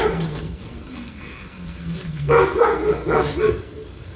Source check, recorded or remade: remade